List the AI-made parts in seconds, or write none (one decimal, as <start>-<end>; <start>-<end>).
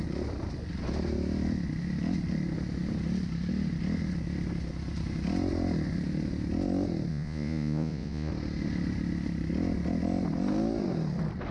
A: 7.1-8.3